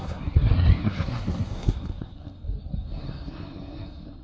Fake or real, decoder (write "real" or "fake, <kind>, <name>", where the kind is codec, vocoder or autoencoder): fake, codec, SNAC